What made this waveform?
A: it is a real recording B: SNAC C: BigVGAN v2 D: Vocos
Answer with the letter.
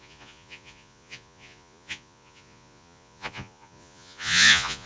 D